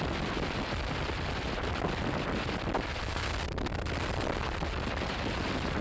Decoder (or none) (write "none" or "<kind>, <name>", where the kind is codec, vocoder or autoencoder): vocoder, BigVGAN v2